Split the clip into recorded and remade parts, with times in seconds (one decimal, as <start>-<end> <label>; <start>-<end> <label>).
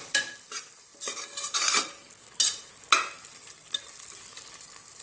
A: 0.0-5.0 recorded